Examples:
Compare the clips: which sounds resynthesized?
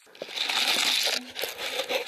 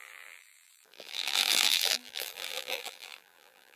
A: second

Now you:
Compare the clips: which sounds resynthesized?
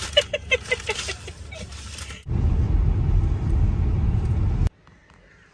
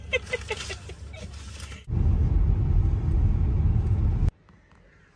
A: first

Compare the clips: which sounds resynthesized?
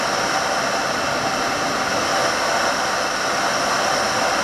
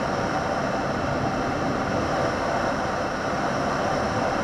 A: second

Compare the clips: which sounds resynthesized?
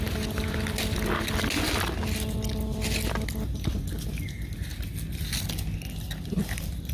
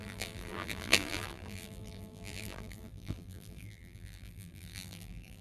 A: second